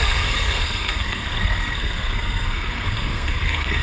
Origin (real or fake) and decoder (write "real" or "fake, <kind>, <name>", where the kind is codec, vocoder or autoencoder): fake, codec, SNAC